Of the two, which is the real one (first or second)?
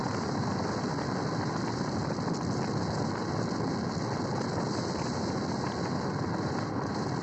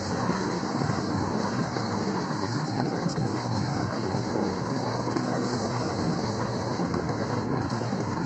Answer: first